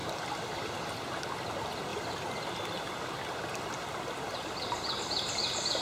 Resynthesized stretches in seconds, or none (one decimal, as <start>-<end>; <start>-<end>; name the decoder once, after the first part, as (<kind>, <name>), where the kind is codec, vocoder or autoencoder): 0.0-0.7 (vocoder, BigVGAN v2); 1.9-5.8